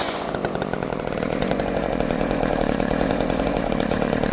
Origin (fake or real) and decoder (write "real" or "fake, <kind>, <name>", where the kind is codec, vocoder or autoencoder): fake, vocoder, Vocos